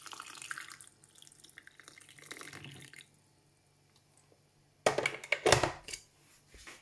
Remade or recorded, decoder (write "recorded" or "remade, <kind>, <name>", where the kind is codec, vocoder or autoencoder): recorded